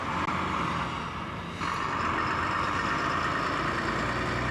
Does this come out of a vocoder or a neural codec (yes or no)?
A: no